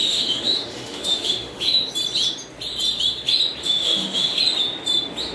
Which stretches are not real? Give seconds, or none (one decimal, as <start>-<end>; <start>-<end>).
0.0-1.9; 3.6-4.4